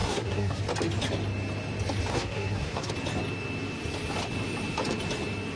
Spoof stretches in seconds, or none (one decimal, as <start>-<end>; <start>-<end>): 0.0-0.6; 2.1-2.9